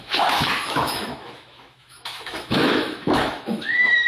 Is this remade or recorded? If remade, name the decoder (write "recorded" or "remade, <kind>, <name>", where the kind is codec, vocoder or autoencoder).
remade, autoencoder, DAC-VAE